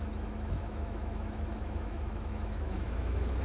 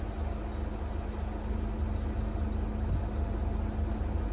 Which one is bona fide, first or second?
second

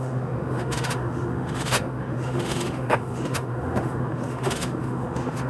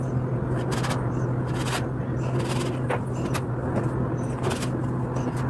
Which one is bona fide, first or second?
second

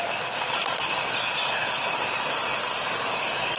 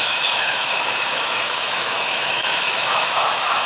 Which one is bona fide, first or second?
first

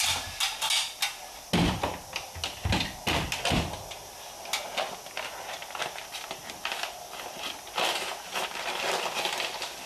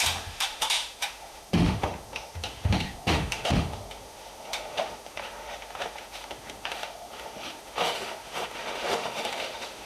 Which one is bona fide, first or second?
first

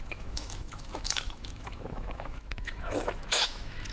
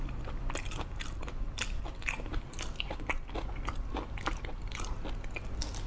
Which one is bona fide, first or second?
second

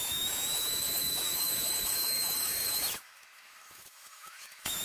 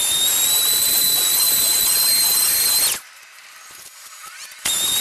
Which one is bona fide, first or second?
second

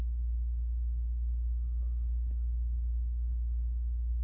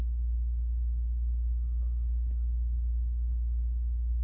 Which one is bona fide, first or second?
second